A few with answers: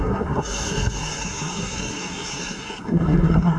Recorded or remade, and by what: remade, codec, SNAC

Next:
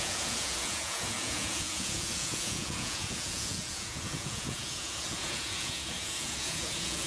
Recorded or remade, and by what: remade, vocoder, Vocos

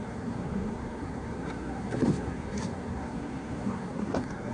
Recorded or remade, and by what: remade, codec, SNAC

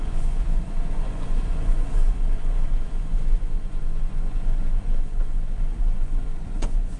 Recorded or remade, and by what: remade, vocoder, Vocos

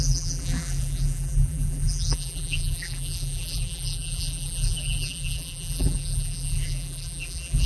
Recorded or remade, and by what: remade, vocoder, BigVGAN v2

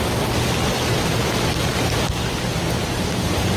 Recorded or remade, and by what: recorded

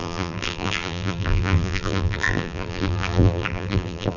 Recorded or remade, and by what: remade, vocoder, BigVGAN v2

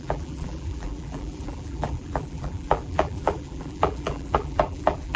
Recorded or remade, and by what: remade, vocoder, BigVGAN v2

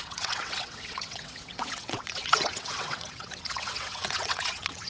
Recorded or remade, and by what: remade, vocoder, WaveNeXt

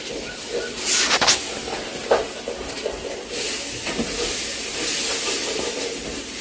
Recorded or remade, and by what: recorded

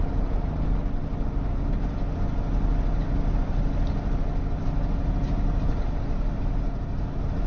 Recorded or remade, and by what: recorded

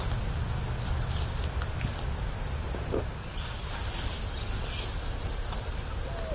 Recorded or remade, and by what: recorded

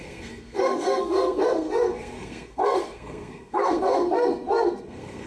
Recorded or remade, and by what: remade, codec, SNAC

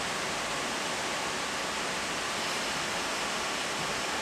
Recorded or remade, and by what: recorded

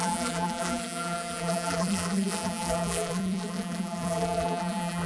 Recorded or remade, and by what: remade, vocoder, BigVGAN v2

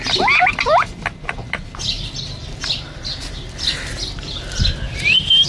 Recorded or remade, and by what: recorded